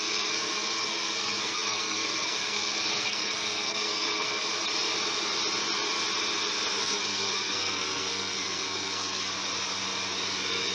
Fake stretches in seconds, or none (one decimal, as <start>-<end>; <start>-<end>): 0.0-4.4; 6.8-9.3